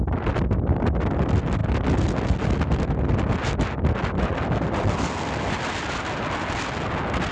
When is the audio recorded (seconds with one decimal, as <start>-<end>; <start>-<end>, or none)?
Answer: 0.0-7.3

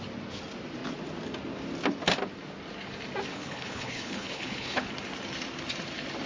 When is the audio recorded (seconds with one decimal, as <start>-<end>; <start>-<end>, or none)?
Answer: 0.0-3.3; 4.9-6.3

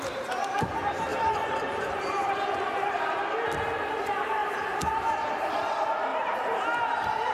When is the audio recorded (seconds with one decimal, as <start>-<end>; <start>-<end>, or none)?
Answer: 0.0-1.1; 2.7-4.4; 5.1-6.1; 6.8-7.3

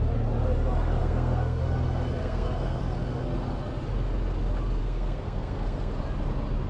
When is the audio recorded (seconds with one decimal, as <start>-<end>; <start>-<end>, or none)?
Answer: 0.0-1.0; 1.6-2.2; 2.8-4.8; 5.9-6.7

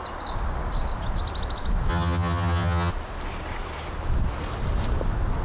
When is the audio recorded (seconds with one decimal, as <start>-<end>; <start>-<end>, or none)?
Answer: 0.0-1.9; 2.9-5.4

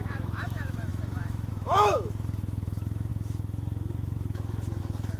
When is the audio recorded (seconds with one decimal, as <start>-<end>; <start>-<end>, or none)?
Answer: none

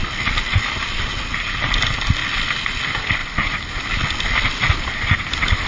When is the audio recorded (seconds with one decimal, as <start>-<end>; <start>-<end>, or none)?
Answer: 0.0-5.7

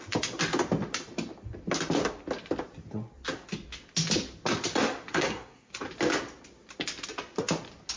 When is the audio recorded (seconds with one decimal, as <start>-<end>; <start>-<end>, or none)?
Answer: 0.0-5.1; 5.7-8.0